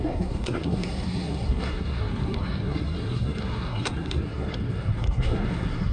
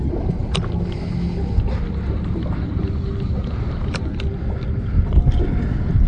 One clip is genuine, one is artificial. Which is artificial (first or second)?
first